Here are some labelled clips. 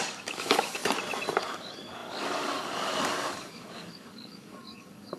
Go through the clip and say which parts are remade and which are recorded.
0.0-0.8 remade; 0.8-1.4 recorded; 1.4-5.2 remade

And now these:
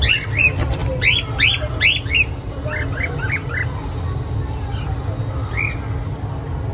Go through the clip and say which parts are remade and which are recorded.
0.0-6.7 recorded

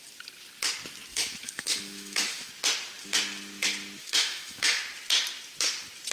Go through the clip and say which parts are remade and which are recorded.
0.0-1.1 recorded; 1.1-2.5 remade; 2.5-4.0 recorded; 4.0-4.8 remade; 4.8-6.1 recorded

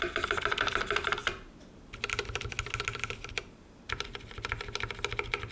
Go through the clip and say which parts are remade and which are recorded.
0.0-5.5 recorded

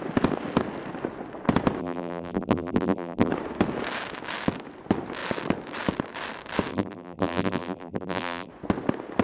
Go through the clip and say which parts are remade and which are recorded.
0.0-1.8 recorded; 1.8-3.3 remade; 3.3-6.7 recorded; 6.7-8.5 remade; 8.5-9.2 recorded

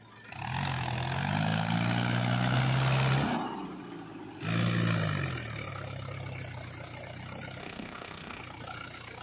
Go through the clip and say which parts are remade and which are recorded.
0.0-7.6 recorded; 7.6-8.4 remade; 8.4-9.2 recorded

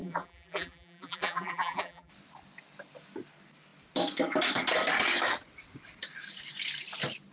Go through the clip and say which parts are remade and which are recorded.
0.0-2.1 remade; 2.1-7.3 recorded

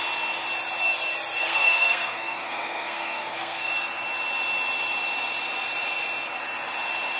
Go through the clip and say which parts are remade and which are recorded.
0.0-1.4 recorded; 1.4-3.7 remade; 3.7-7.2 recorded